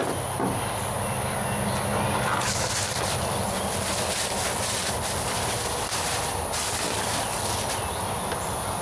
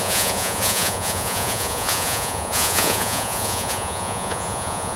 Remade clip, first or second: second